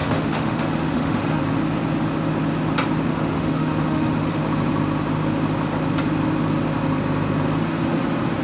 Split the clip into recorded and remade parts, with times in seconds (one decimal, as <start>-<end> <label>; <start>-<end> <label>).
0.0-1.4 remade; 1.4-3.1 recorded; 3.1-4.4 remade; 4.4-8.4 recorded